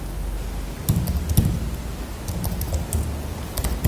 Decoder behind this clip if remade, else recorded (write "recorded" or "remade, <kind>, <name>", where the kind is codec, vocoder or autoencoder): recorded